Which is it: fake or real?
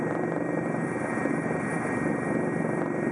fake